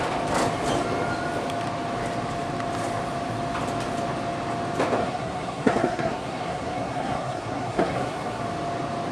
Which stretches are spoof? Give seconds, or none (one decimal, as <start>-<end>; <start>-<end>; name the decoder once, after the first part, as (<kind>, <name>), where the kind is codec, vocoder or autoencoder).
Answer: 5.0-8.4 (codec, SNAC)